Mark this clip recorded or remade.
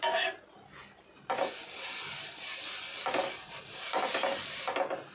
recorded